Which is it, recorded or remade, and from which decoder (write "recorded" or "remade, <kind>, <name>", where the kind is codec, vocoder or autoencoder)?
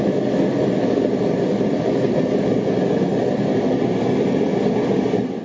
recorded